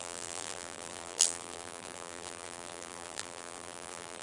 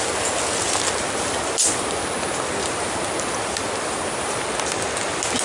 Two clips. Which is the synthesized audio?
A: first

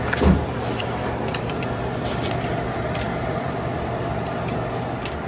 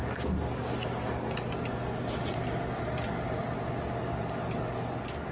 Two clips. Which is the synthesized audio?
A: first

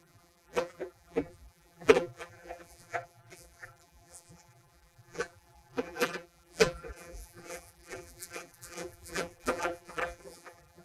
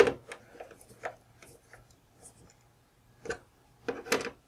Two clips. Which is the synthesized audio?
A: first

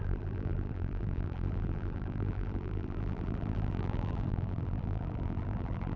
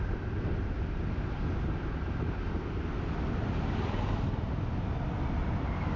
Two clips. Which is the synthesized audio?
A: first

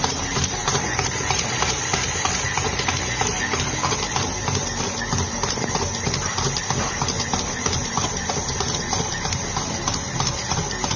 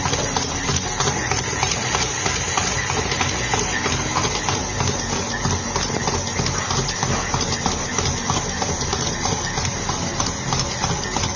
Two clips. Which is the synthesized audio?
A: first